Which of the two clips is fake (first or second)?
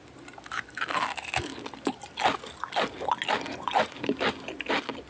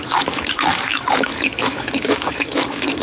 second